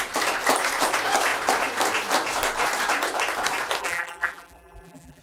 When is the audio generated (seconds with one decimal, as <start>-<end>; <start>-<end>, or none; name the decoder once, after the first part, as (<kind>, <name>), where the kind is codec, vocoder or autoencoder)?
3.8-5.2 (vocoder, BigVGAN v2)